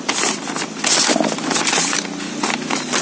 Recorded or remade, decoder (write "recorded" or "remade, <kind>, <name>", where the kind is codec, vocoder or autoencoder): recorded